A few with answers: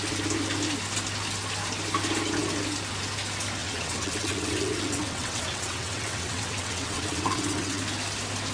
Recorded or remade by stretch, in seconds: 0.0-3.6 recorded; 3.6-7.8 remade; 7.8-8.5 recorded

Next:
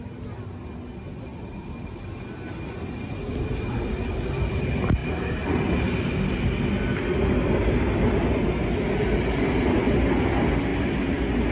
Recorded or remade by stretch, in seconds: 0.0-1.3 recorded; 1.3-2.0 remade; 2.0-11.5 recorded

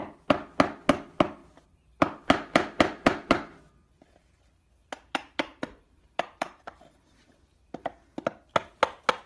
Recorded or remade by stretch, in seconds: 0.0-1.4 recorded; 1.4-3.6 remade; 3.6-4.8 recorded; 4.8-7.5 remade; 7.5-9.3 recorded

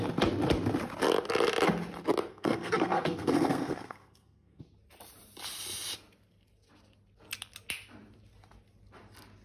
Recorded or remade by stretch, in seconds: 0.0-2.3 recorded; 2.3-4.6 remade; 4.6-9.4 recorded